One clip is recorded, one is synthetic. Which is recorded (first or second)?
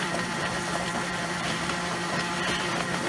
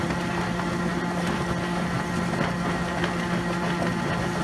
second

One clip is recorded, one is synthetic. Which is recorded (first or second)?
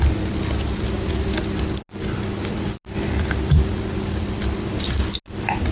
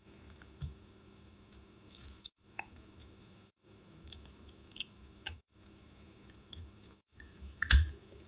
first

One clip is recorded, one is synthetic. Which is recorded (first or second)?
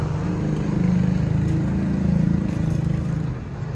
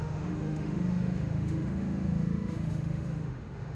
first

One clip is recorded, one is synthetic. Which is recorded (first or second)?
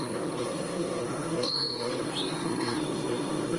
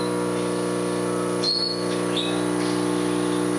second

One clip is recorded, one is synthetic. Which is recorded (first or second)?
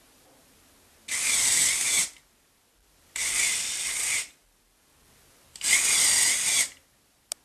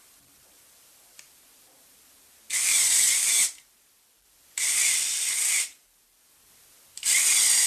first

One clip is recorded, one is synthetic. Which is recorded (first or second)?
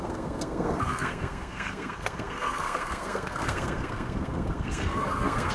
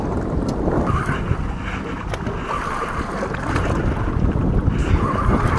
second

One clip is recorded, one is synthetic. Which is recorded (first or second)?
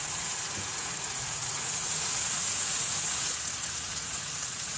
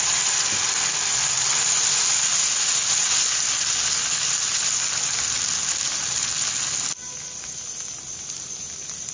second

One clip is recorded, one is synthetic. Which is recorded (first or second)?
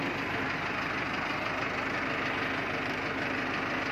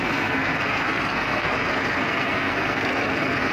first